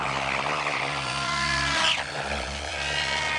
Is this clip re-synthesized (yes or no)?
yes